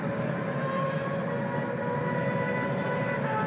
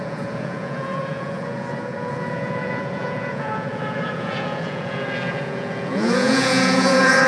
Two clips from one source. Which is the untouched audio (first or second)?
first